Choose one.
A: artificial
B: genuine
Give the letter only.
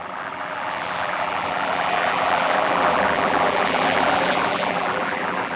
A